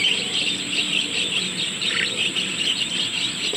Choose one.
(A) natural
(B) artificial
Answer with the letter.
B